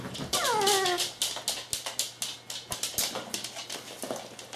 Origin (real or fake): real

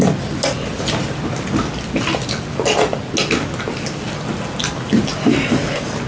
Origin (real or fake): real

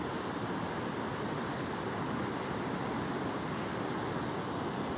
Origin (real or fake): real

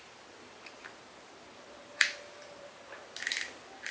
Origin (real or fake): real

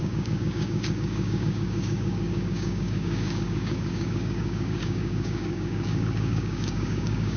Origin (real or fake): fake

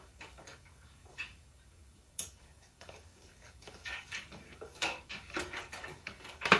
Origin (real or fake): fake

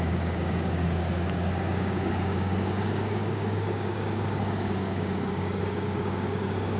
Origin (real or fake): fake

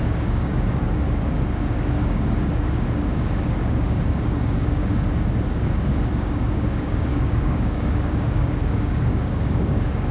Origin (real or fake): fake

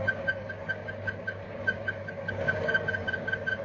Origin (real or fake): fake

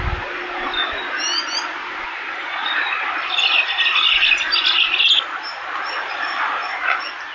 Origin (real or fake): real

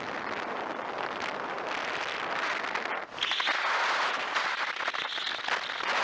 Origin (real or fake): real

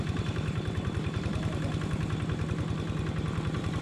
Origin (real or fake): real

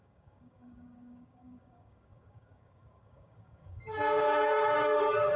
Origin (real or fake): fake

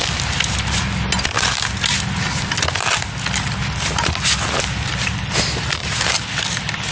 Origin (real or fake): real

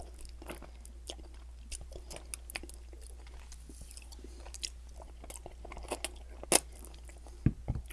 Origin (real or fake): real